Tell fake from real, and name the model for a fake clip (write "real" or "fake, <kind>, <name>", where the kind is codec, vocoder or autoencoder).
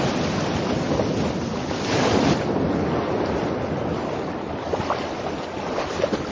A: real